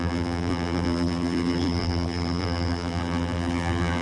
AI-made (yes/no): yes